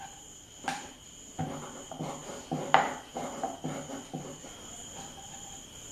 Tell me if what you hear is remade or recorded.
recorded